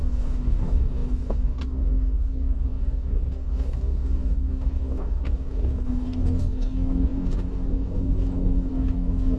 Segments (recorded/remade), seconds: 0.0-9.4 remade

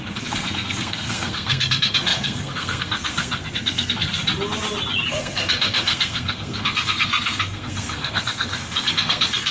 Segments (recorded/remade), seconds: 0.0-4.2 remade; 4.2-5.1 recorded; 5.1-9.5 remade

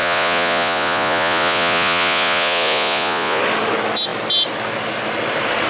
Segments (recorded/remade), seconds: 0.0-3.4 remade; 3.4-5.7 recorded

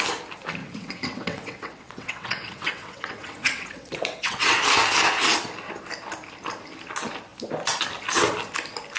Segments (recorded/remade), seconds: 0.0-0.6 recorded; 0.6-4.6 remade; 4.6-9.0 recorded

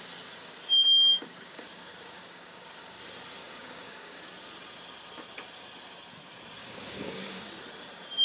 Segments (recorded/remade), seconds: 0.0-1.1 recorded; 1.1-3.0 remade; 3.0-3.4 recorded; 3.4-4.2 remade; 4.2-6.6 recorded; 6.6-7.5 remade; 7.5-8.2 recorded

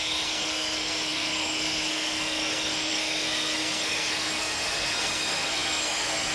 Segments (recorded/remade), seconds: 0.0-6.3 remade